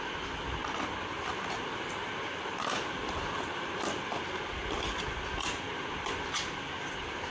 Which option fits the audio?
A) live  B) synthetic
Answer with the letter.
A